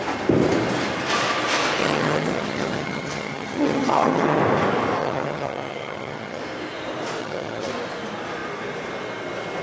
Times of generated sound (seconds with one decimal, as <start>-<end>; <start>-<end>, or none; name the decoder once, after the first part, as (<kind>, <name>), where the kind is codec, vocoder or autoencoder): 1.8-4.4 (vocoder, HiFi-GAN); 5.0-6.4; 7.2-7.7